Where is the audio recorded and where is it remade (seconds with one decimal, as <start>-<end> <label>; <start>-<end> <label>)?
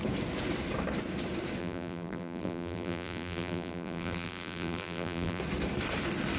0.0-1.6 recorded; 1.6-5.4 remade; 5.4-6.4 recorded